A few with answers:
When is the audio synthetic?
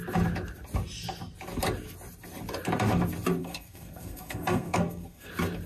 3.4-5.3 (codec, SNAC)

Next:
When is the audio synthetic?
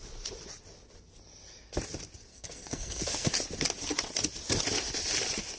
2.3-3.3 (codec, SNAC)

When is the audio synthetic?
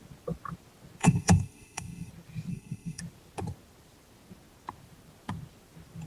1.0-2.1 (codec, SNAC); 2.5-3.0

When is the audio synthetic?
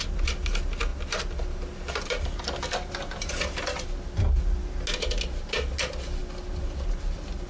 none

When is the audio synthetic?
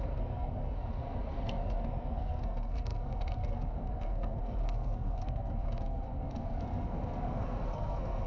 0.0-8.3 (codec, SNAC)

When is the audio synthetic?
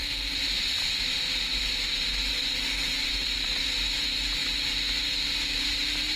none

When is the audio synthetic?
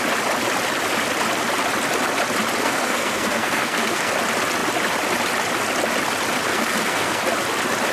2.6-4.1 (codec, SNAC); 6.5-7.2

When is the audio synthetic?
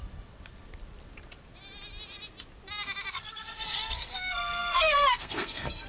3.1-5.9 (codec, SNAC)